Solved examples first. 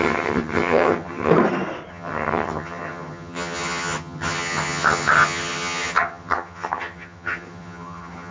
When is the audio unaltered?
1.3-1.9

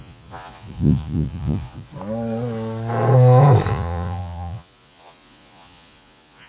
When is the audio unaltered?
1.9-3.7

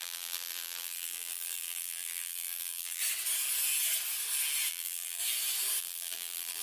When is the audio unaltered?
3.0-4.7; 5.2-5.8

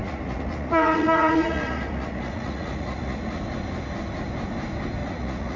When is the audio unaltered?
3.4-5.0